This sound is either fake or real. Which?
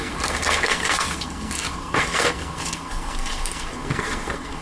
fake